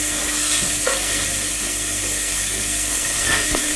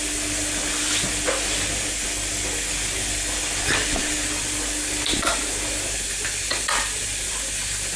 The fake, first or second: first